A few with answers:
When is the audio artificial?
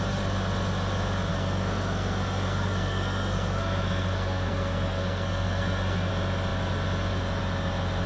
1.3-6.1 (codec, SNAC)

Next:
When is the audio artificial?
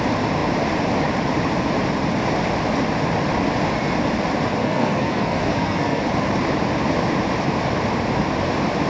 4.6-6.0 (codec, SNAC)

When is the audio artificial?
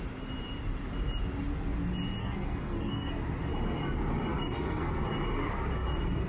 2.2-3.1 (codec, SNAC); 4.3-4.9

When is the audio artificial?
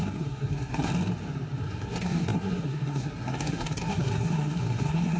0.0-0.9 (codec, SNAC); 1.6-5.2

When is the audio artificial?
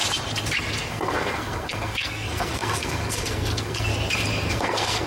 0.9-3.9 (codec, SNAC); 4.5-5.1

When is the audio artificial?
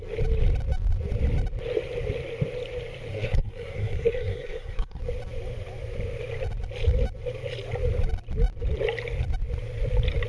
3.1-5.0 (codec, SNAC)